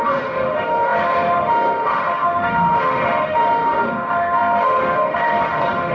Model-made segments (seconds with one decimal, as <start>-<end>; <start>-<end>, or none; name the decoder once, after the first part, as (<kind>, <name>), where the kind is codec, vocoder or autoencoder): 0.0-5.9 (autoencoder, DAC-VAE)

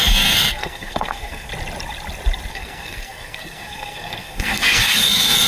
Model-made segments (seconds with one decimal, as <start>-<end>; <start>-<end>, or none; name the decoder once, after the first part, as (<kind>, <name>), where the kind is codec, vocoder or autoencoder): 0.0-1.5 (codec, SNAC); 2.5-5.5

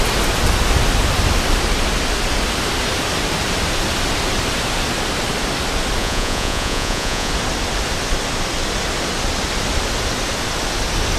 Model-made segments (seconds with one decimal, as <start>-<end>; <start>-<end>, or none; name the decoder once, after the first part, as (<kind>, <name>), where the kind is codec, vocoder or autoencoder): 6.0-7.3 (vocoder, Vocos)

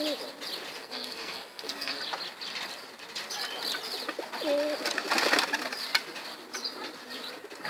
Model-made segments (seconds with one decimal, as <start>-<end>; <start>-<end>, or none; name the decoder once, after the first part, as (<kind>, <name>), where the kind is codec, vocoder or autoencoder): 0.8-2.0 (codec, SNAC)

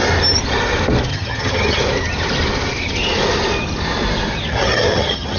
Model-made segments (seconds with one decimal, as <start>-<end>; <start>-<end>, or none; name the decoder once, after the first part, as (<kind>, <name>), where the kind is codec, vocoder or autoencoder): 1.1-1.8 (vocoder, HiFi-GAN); 4.5-5.4